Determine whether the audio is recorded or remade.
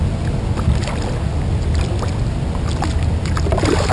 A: recorded